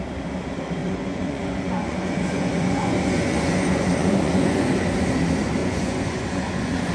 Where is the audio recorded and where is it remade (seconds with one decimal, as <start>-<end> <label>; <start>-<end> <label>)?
0.0-0.8 recorded; 0.8-4.7 remade; 4.7-5.6 recorded; 5.6-6.9 remade